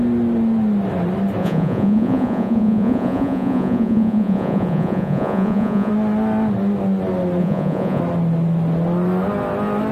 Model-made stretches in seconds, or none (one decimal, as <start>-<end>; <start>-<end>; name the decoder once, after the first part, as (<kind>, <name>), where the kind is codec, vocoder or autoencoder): 1.4-5.9 (vocoder, Vocos); 7.4-8.0